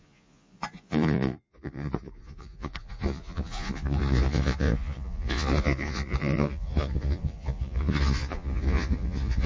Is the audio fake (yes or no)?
yes